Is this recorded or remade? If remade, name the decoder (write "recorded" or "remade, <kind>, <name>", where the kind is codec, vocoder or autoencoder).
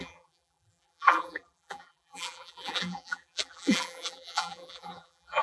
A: remade, vocoder, BigVGAN v2